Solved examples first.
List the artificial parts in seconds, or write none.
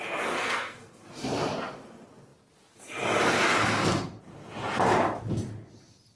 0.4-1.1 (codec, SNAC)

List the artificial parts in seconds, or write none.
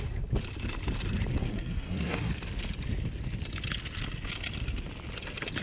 1.4-2.3 (codec, SNAC)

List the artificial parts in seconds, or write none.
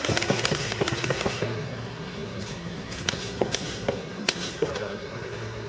0.0-5.7 (codec, SNAC)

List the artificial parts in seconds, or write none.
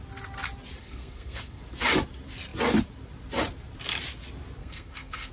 0.8-1.6 (codec, SNAC); 4.6-5.3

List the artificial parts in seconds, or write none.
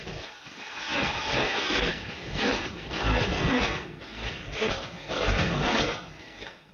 0.0-6.7 (codec, SNAC)